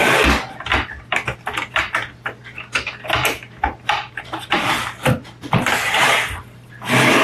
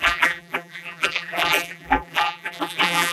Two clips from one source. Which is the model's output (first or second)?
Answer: second